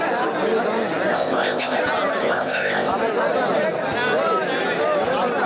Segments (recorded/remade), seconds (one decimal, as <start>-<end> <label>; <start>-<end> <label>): 0.0-1.1 recorded; 1.1-1.8 remade; 1.8-2.2 recorded; 2.2-2.9 remade; 2.9-5.5 recorded